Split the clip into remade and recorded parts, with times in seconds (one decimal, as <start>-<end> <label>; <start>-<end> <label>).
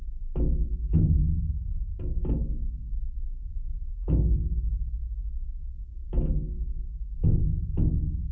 0.0-1.2 recorded; 1.2-4.7 remade; 4.7-6.0 recorded; 6.0-7.4 remade; 7.4-8.3 recorded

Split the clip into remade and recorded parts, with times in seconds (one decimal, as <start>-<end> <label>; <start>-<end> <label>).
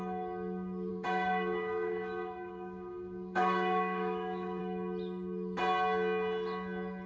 0.0-0.9 recorded; 0.9-4.6 remade; 4.6-7.1 recorded